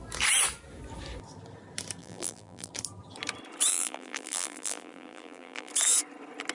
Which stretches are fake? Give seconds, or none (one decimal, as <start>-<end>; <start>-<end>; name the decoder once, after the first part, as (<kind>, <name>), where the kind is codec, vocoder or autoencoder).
2.0-2.7 (vocoder, BigVGAN v2); 3.7-5.7